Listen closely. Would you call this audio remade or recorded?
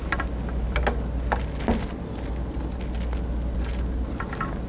recorded